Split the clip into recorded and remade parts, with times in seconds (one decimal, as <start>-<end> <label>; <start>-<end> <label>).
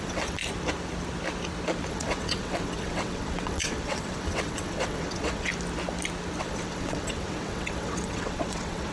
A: 0.0-0.4 remade; 0.4-1.9 recorded; 1.9-5.5 remade; 5.5-6.4 recorded; 6.4-8.9 remade